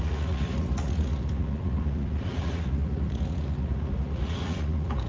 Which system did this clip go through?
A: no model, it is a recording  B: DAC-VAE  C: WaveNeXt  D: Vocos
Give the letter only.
D